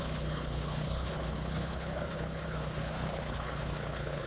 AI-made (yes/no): yes